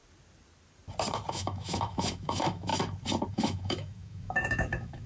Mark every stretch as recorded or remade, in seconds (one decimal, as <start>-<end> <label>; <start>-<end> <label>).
0.0-1.3 recorded; 1.3-2.7 remade; 2.7-3.3 recorded; 3.3-5.1 remade